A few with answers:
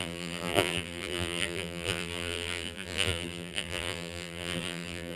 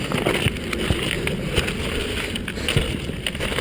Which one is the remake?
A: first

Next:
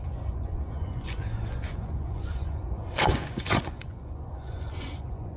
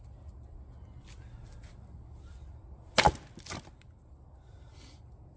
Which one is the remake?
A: first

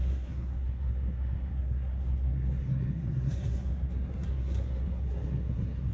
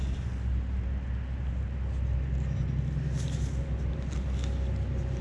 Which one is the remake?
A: first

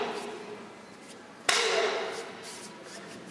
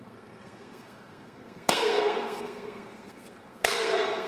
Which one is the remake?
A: second